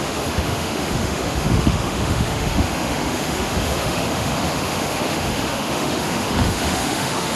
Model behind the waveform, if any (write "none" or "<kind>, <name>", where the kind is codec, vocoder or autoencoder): autoencoder, DAC-VAE